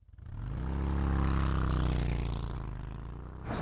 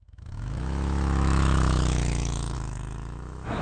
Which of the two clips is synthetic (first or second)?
second